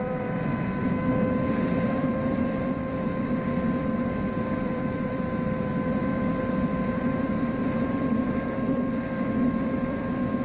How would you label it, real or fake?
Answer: fake